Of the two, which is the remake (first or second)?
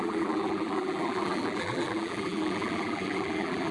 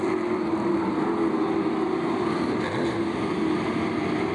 first